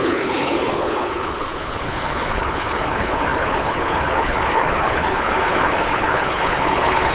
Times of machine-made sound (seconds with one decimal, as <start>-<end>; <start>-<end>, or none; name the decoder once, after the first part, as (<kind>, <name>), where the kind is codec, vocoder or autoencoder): 0.0-7.1 (codec, HILCodec)